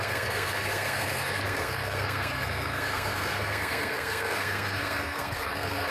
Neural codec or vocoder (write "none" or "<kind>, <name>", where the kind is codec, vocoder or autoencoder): codec, SNAC